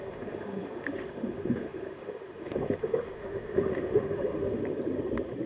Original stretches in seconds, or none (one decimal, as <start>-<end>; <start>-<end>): 4.6-5.5